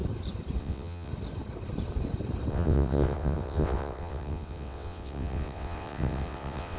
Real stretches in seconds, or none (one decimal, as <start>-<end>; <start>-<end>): 0.0-0.6; 1.1-2.5